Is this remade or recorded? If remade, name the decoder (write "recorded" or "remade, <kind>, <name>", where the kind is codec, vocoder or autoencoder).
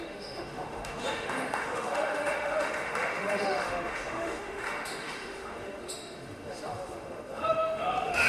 remade, autoencoder, DAC-VAE